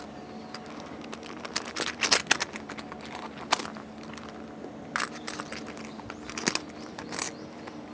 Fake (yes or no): no